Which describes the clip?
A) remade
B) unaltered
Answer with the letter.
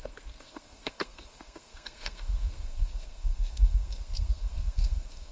A